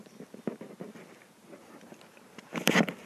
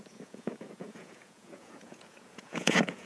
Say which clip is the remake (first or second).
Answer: second